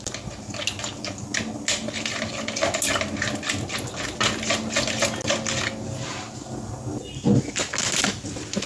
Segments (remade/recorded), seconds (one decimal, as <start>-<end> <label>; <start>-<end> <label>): 0.0-8.7 recorded